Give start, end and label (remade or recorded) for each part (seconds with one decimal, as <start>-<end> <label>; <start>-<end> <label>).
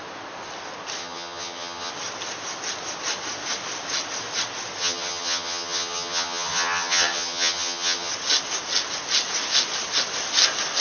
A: 0.0-1.0 recorded; 1.0-1.9 remade; 1.9-4.8 recorded; 4.8-8.1 remade; 8.1-10.8 recorded